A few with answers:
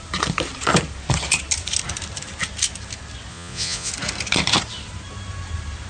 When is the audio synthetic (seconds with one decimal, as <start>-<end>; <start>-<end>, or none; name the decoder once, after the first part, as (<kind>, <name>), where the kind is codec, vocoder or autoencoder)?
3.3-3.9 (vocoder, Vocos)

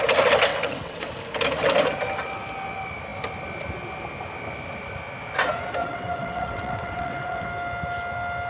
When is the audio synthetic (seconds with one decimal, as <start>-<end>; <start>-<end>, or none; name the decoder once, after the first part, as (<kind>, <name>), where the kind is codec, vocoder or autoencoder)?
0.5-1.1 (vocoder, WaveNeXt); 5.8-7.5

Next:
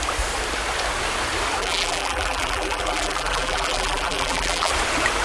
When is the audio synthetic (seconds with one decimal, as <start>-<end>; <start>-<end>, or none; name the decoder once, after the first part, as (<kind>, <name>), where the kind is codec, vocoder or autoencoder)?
1.6-4.7 (vocoder, BigVGAN v2)

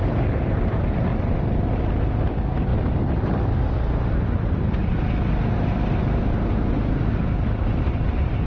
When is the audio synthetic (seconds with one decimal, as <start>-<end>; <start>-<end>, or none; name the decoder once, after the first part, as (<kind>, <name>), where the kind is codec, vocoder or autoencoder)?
none

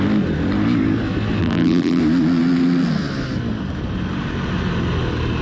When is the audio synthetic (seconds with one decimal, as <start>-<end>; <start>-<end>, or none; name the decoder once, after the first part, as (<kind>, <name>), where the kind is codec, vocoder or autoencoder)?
1.4-2.0 (vocoder, BigVGAN v2)